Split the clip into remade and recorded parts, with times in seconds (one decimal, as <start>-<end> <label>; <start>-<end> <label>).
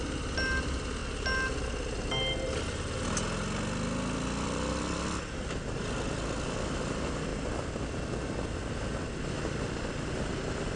0.0-10.8 recorded